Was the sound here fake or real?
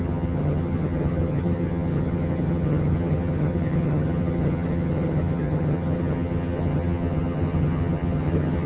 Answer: fake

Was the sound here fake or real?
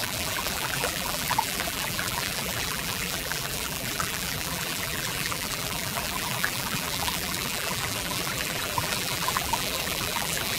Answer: fake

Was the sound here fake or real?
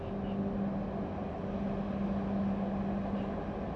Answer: real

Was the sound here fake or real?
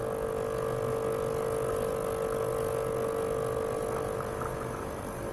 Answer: real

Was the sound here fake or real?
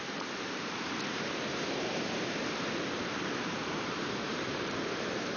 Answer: fake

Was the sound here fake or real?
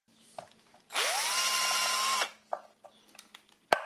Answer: real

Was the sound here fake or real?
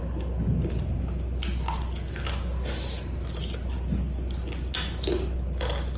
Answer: real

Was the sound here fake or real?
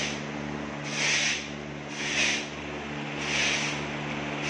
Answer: real